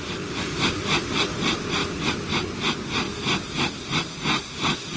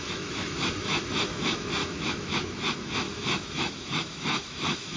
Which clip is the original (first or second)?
first